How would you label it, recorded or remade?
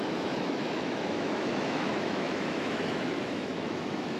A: remade